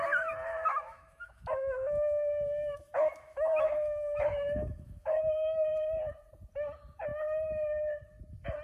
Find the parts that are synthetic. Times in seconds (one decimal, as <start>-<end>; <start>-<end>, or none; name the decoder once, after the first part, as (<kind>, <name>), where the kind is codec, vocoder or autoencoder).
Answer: 0.5-5.2 (autoencoder, DAC-VAE)

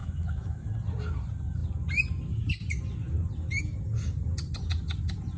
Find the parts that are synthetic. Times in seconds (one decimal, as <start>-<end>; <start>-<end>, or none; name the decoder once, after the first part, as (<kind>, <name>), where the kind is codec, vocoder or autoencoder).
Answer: 0.0-0.7 (autoencoder, DAC-VAE)